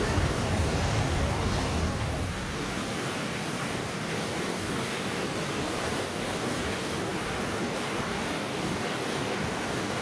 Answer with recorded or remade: remade